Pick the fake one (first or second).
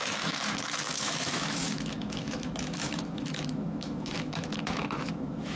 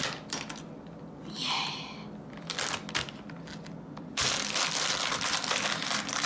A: first